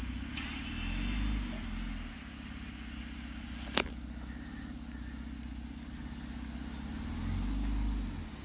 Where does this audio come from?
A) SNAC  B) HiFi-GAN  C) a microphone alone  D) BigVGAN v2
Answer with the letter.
C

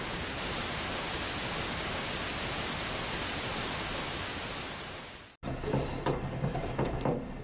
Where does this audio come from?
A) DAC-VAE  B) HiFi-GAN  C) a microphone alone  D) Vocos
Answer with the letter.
C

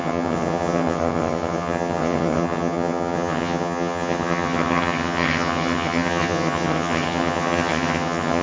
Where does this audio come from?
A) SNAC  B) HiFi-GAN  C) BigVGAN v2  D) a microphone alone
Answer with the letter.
B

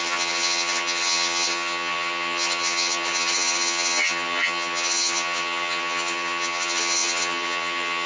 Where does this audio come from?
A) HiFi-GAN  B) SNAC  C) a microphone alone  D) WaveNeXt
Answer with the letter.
A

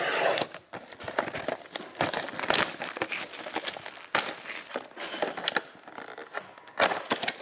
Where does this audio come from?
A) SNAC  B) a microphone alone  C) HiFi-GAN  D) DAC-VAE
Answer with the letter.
B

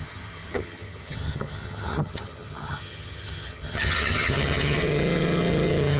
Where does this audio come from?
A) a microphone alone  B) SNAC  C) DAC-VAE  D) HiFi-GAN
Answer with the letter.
D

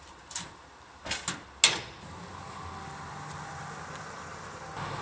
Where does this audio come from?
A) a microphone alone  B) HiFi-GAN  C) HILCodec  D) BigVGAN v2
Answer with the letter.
A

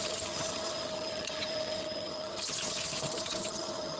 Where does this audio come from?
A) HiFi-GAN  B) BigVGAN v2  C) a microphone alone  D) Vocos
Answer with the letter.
A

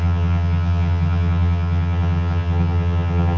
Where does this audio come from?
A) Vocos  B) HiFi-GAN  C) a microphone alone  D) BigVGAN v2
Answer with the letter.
B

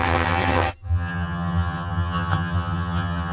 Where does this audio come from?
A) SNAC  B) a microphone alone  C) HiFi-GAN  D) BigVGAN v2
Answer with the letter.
C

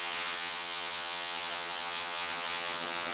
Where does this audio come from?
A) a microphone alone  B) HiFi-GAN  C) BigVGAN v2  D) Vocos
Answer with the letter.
B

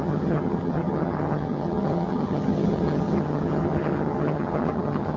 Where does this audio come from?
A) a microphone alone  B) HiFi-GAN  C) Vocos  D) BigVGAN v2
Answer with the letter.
B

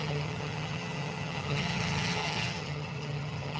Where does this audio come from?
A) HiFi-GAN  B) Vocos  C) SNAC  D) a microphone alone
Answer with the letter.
A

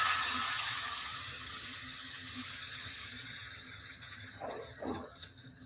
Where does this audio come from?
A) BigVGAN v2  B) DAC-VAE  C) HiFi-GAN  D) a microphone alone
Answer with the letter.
C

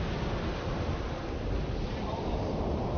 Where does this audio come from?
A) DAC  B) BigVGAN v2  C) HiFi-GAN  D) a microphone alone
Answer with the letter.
D